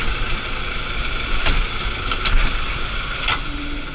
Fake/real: real